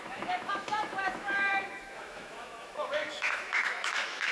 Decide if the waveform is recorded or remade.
remade